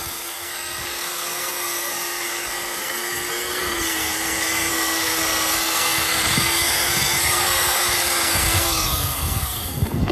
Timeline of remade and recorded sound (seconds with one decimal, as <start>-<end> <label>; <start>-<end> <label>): 0.0-10.1 remade